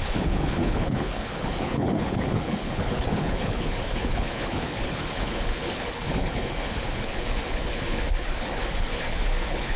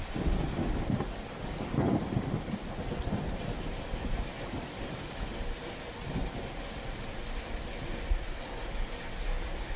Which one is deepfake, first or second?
first